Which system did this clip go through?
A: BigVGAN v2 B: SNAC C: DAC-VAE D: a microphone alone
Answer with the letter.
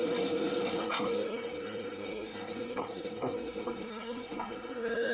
B